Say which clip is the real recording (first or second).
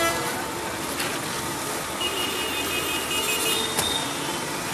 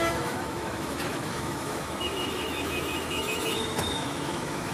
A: first